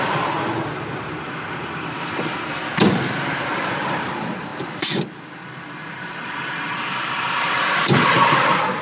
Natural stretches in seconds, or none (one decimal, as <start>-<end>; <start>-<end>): 2.7-3.5